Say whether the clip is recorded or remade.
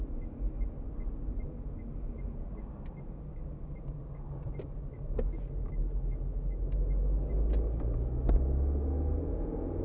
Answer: recorded